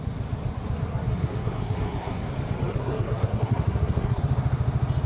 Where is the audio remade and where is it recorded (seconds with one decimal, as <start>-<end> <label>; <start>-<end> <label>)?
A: 0.0-1.1 recorded; 1.1-2.3 remade; 2.3-2.7 recorded; 2.7-4.2 remade; 4.2-5.1 recorded